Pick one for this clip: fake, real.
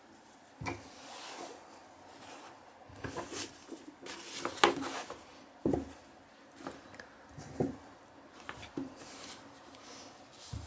real